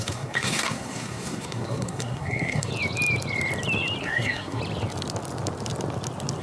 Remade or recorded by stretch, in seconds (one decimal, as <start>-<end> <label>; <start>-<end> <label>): 0.0-2.7 remade; 2.7-4.0 recorded; 4.0-4.6 remade; 4.6-6.4 recorded